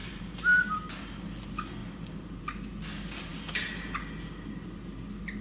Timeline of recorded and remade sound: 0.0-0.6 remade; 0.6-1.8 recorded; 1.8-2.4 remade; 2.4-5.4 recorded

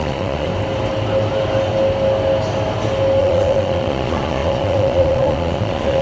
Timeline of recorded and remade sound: 0.0-0.5 remade; 0.5-3.2 recorded; 3.2-6.0 remade

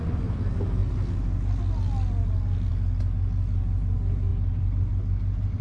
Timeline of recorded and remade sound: 0.0-5.6 recorded

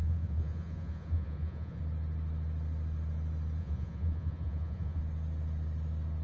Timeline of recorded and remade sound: 0.0-1.8 remade; 1.8-3.6 recorded; 3.6-5.0 remade; 5.0-6.2 recorded

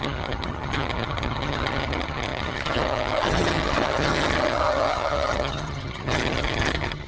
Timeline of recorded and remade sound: 0.0-7.1 remade